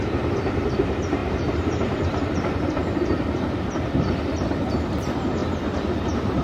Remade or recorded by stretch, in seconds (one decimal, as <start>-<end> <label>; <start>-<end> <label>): 0.0-5.4 remade; 5.4-5.9 recorded; 5.9-6.4 remade